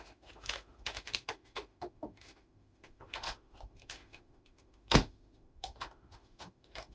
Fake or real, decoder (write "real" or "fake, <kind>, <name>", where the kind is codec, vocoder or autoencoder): fake, autoencoder, DAC-VAE